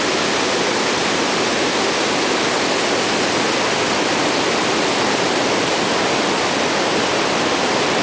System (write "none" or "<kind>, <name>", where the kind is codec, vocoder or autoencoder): none